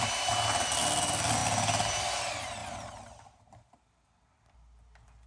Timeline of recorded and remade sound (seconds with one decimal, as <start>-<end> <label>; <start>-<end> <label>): 0.0-2.6 recorded; 2.6-3.9 remade; 3.9-5.3 recorded